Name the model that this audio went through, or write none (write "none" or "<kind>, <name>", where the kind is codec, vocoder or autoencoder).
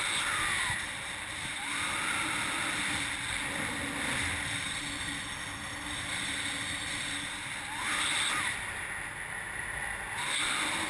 none